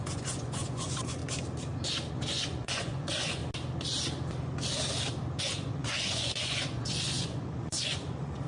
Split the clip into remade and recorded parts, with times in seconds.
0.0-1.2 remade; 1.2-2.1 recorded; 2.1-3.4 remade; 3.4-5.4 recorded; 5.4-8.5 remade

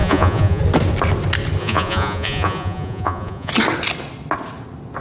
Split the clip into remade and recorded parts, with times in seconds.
0.0-0.6 remade; 0.6-1.6 recorded; 1.6-3.5 remade; 3.5-5.0 recorded

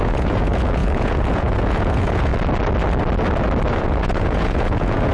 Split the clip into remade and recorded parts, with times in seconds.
0.0-2.3 remade; 2.3-3.7 recorded; 3.7-5.1 remade

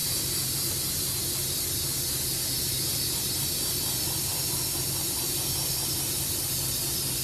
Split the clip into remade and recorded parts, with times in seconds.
0.0-0.8 remade; 0.8-4.3 recorded; 4.3-5.0 remade; 5.0-7.2 recorded

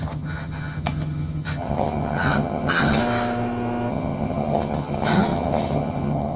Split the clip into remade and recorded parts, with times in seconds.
0.0-3.0 remade; 3.0-3.9 recorded; 3.9-6.4 remade

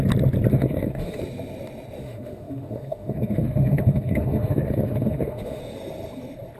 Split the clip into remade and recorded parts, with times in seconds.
0.0-0.5 recorded; 0.5-1.2 remade; 1.2-2.0 recorded; 2.0-5.6 remade; 5.6-6.6 recorded

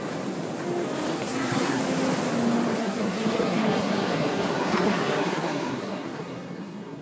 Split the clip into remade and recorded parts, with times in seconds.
0.0-1.1 recorded; 1.1-1.8 remade; 1.8-2.8 recorded; 2.8-7.0 remade

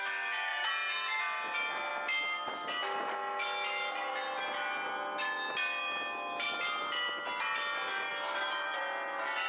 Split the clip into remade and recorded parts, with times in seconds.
0.0-9.5 recorded